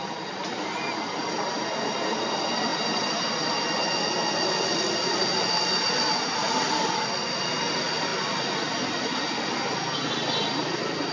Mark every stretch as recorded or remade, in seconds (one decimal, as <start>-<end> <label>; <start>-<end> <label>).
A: 0.0-11.1 recorded